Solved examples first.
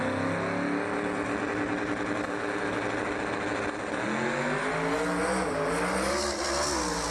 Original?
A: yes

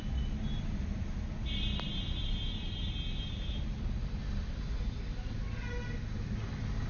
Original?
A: yes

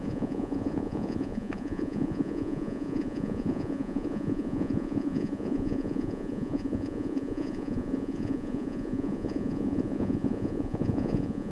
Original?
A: no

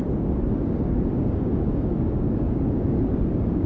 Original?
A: no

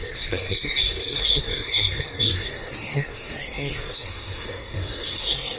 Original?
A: no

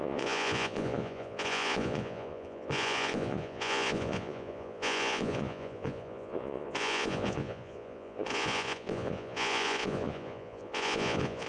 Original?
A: no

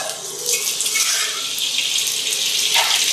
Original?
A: yes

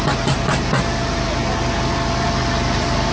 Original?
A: yes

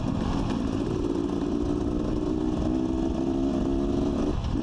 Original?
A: yes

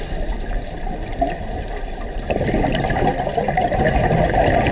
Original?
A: yes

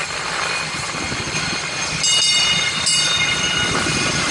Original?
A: yes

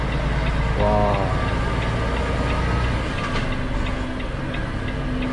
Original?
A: yes